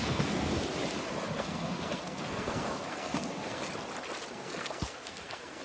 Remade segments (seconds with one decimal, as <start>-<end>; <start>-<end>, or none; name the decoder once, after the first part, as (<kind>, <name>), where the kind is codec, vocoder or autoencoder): 0.0-0.5 (codec, SNAC); 1.4-3.6; 4.3-5.6